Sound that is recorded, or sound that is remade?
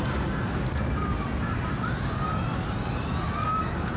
recorded